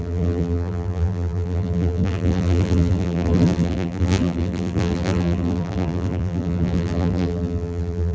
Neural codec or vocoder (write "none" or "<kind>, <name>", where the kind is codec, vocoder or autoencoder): vocoder, BigVGAN v2